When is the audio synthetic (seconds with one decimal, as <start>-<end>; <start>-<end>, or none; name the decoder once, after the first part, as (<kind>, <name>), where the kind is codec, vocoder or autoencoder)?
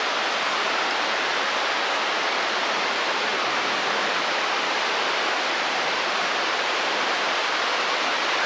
none